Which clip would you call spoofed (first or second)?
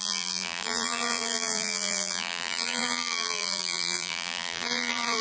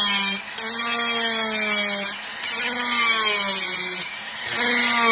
first